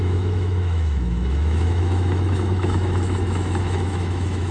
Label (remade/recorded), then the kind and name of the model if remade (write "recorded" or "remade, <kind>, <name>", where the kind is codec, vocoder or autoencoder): remade, autoencoder, DAC-VAE